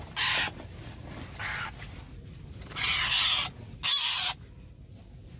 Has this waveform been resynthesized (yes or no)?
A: no